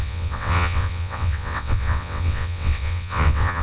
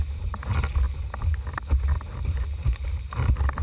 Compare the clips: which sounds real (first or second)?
second